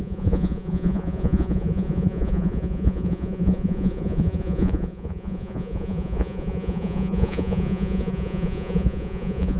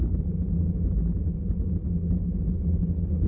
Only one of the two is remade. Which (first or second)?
first